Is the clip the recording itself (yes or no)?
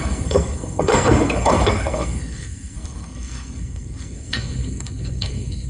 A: no